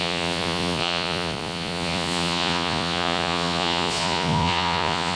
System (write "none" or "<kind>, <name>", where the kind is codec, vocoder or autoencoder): vocoder, Vocos